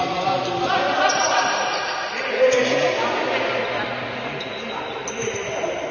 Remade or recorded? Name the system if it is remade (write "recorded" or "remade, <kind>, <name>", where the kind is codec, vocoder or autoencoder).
recorded